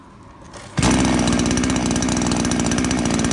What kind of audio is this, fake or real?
real